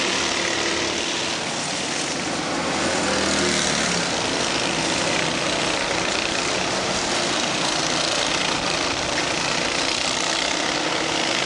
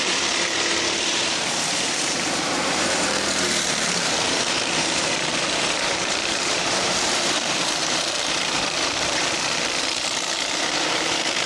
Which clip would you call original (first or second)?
first